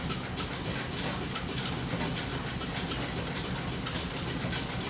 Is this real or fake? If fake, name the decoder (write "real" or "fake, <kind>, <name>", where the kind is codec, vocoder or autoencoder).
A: real